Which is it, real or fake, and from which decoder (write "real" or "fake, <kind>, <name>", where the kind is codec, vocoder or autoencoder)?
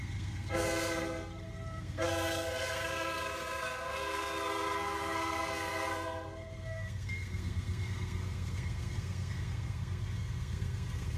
fake, codec, SNAC